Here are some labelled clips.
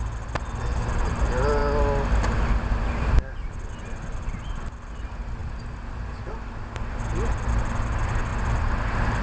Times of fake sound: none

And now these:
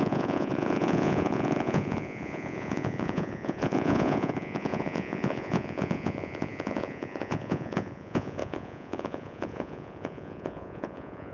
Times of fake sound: 0.0-11.3 (vocoder, Vocos)

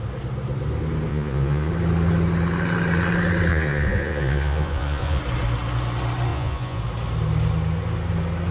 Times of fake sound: 1.1-1.7 (vocoder, Vocos); 3.5-5.2; 6.3-6.8

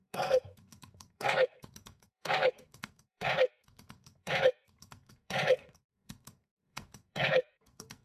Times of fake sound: 0.0-8.0 (codec, SNAC)

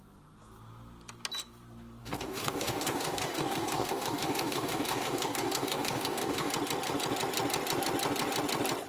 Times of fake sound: 2.0-6.5 (codec, DAC)